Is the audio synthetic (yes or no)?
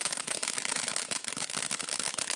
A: yes